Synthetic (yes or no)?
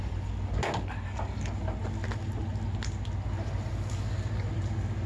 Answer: no